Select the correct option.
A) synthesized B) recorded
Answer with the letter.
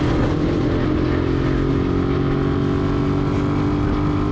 B